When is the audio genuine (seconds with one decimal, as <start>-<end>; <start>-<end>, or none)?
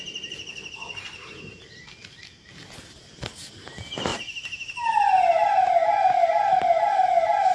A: 0.0-0.5; 2.7-4.1; 5.2-7.5